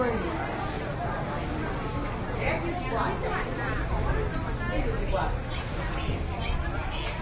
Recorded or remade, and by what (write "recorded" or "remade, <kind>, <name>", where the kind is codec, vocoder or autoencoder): recorded